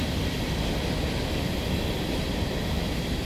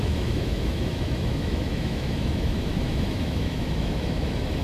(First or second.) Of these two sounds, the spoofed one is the second